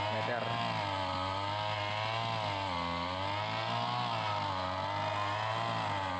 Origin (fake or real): real